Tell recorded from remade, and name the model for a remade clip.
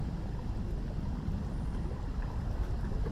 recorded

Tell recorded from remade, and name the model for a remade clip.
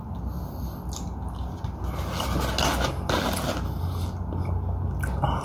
recorded